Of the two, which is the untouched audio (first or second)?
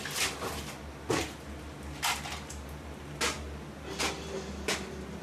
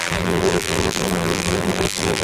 first